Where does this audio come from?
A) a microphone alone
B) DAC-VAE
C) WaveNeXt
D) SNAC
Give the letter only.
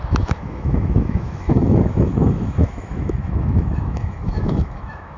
B